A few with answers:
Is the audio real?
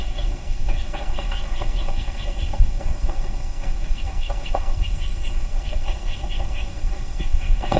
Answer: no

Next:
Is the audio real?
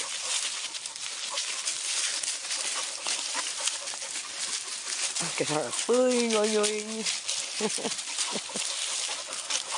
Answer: yes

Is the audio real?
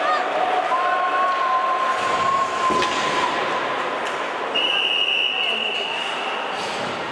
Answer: yes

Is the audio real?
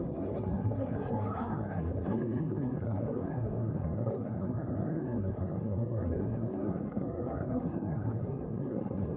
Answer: no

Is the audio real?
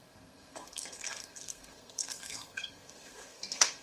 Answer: no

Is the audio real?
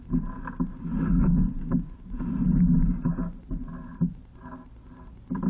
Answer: yes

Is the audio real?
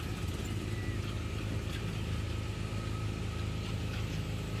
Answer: yes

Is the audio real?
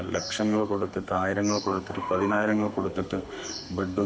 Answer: no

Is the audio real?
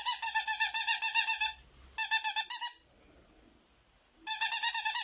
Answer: yes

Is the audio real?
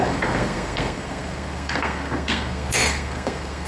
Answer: no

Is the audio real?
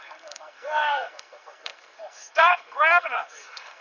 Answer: no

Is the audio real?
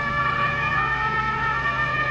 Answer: no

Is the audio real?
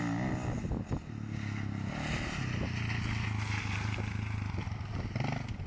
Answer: yes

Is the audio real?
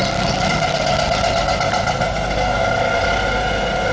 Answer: yes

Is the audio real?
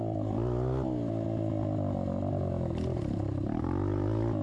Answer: yes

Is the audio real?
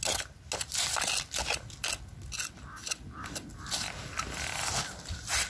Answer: yes